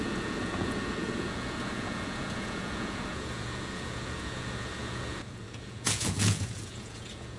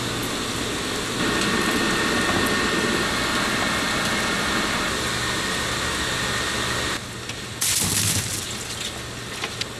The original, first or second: second